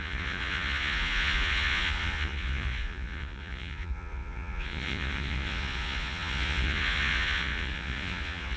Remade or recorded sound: remade